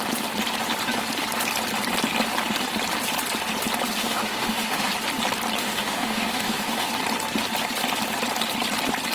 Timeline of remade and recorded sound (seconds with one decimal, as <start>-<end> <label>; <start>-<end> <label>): 0.0-4.0 recorded; 4.0-4.9 remade; 4.9-5.6 recorded; 5.6-6.9 remade; 6.9-9.1 recorded